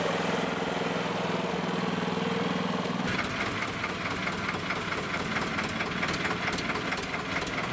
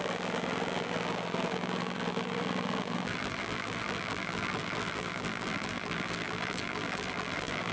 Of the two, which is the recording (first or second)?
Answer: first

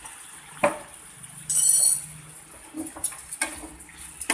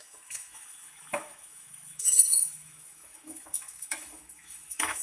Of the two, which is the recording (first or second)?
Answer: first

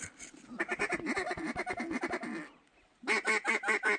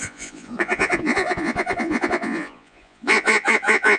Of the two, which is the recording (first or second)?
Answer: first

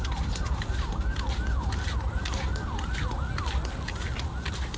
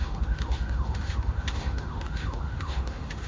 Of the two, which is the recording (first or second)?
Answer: first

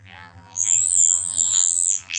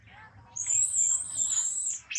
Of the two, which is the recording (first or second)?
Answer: second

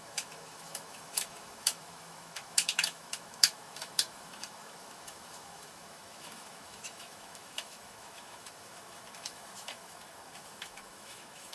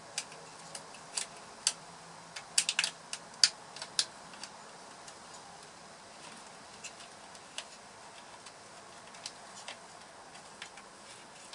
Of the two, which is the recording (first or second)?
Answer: second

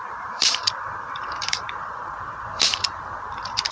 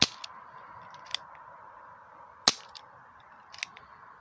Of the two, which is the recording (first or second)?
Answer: second